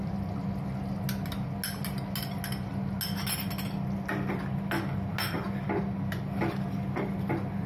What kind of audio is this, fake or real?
real